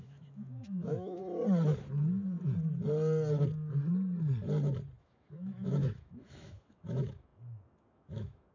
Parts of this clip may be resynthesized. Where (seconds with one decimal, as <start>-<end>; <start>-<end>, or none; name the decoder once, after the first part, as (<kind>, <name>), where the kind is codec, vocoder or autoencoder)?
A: 0.0-1.2 (autoencoder, DAC-VAE); 5.0-8.5